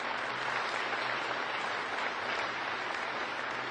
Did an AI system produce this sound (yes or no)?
no